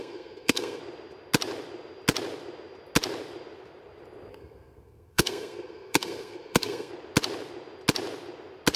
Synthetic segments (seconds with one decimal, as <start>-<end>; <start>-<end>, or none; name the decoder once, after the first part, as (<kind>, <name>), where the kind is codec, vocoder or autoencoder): 0.0-0.8 (codec, SNAC); 4.3-6.9